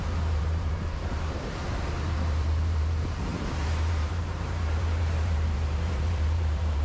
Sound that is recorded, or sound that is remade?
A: remade